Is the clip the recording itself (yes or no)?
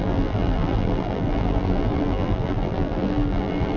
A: no